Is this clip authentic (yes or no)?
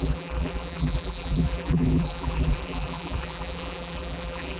no